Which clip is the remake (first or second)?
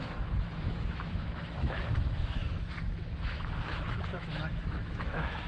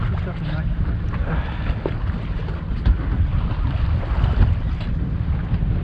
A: first